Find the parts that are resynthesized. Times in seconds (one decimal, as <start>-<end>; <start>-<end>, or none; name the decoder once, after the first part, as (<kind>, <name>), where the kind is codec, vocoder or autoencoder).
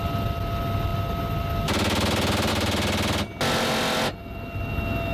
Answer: none